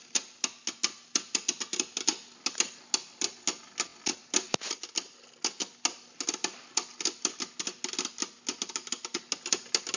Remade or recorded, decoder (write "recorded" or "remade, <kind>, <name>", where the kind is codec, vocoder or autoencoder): recorded